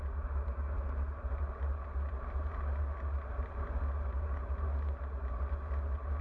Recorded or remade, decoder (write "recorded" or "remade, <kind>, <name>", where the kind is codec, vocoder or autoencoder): recorded